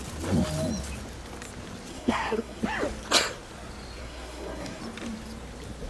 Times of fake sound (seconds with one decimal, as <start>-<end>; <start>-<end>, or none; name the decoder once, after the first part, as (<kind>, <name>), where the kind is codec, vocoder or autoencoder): 1.9-2.6 (codec, SNAC); 4.0-4.8